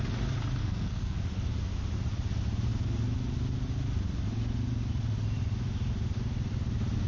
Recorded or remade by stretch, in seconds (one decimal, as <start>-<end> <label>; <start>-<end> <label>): 0.0-0.6 recorded; 0.6-1.2 remade; 1.2-7.1 recorded